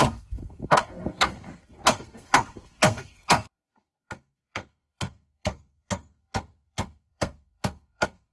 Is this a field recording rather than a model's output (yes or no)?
no